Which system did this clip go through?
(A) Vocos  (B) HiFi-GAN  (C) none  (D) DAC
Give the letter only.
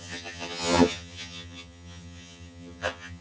B